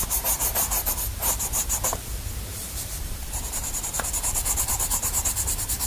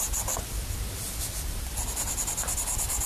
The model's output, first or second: first